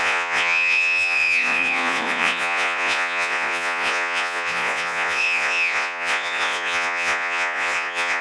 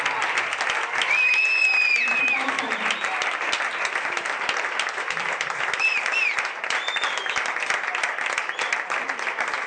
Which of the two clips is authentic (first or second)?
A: second